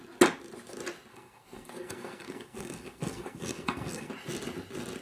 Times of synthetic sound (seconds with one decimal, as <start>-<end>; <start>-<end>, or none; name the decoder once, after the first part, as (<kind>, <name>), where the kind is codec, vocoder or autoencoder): 1.1-4.1 (codec, SNAC)